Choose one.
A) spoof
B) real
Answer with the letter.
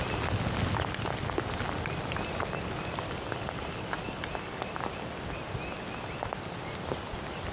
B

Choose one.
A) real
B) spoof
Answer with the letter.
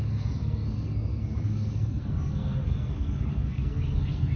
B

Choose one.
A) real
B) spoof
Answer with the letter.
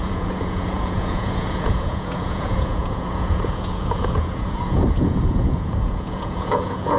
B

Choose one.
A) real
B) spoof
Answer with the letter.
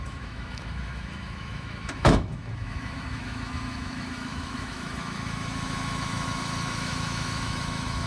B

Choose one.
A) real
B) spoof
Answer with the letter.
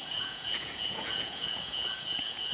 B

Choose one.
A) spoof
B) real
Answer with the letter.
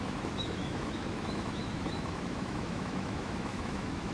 A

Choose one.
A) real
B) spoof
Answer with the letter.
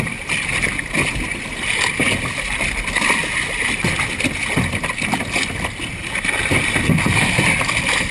A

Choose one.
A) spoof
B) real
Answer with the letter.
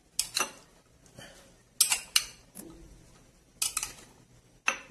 B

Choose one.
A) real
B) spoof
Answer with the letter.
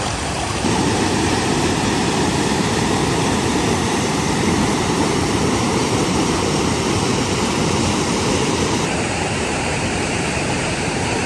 B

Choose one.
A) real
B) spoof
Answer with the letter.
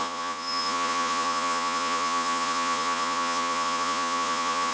B